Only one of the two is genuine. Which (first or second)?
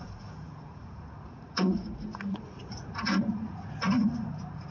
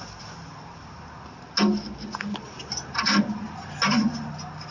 second